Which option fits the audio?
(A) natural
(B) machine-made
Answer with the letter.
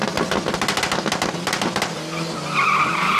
A